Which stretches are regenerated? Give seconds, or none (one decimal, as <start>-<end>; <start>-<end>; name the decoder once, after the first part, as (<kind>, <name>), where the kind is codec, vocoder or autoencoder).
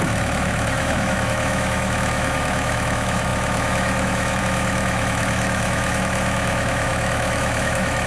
0.0-8.1 (autoencoder, DAC-VAE)